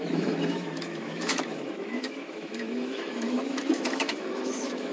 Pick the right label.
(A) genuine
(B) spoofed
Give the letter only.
B